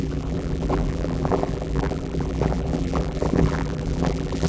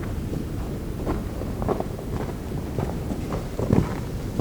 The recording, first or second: second